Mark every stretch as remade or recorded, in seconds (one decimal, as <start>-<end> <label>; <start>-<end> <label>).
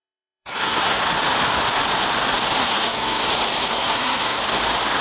0.0-1.0 remade; 1.0-2.6 recorded; 2.6-3.2 remade; 3.2-3.7 recorded; 3.7-4.4 remade; 4.4-5.0 recorded